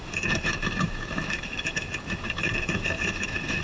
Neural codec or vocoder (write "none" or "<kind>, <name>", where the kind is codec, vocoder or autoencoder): autoencoder, DAC-VAE